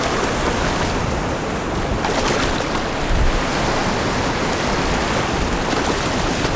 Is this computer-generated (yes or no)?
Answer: no